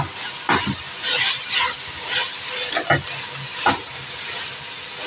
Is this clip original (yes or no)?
yes